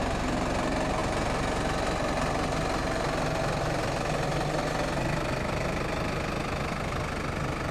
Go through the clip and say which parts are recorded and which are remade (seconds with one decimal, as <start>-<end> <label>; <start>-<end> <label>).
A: 0.0-7.7 recorded